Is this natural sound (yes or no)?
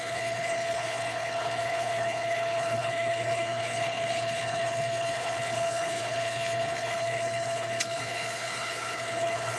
no